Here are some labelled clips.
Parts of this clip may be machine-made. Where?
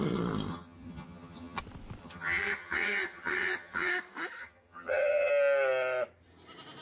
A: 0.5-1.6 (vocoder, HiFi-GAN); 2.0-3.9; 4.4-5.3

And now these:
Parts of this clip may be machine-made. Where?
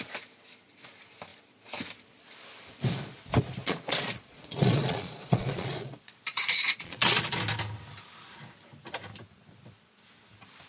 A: 3.6-7.2 (vocoder, Vocos)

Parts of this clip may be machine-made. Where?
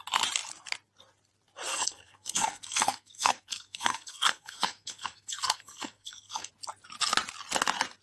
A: 1.7-6.5 (codec, SNAC)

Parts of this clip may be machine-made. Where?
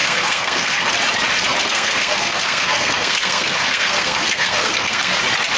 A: 0.0-0.9 (codec, SNAC); 1.7-5.1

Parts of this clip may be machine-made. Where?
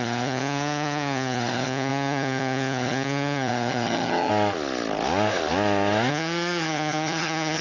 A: 0.0-4.3 (vocoder, HiFi-GAN); 6.1-7.6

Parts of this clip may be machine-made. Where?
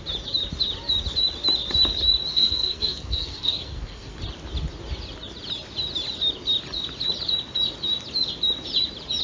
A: 2.3-4.2 (codec, SNAC)